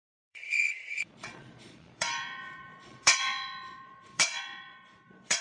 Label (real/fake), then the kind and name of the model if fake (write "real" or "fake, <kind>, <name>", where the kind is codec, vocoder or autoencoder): fake, vocoder, Vocos